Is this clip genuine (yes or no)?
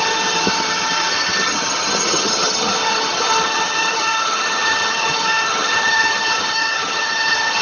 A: no